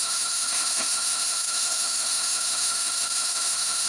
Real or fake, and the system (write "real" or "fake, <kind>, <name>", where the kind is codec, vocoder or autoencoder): fake, autoencoder, DAC-VAE